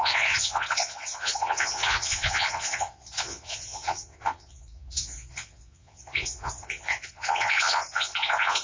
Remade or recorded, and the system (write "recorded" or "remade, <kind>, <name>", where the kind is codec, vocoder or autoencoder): remade, vocoder, Vocos